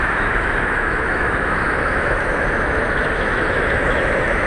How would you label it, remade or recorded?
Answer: remade